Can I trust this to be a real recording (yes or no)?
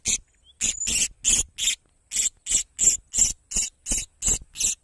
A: yes